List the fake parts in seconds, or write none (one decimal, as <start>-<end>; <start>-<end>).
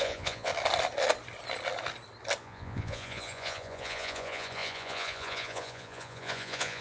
0.0-0.5; 2.4-6.8